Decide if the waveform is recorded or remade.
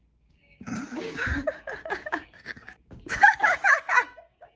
remade